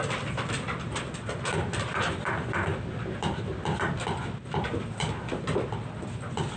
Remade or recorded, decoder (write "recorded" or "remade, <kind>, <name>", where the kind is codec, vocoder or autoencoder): recorded